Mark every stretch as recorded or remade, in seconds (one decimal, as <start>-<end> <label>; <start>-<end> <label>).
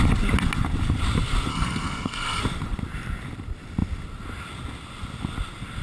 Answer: 0.0-1.5 recorded; 1.5-2.4 remade; 2.4-5.8 recorded